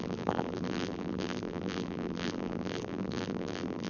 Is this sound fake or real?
fake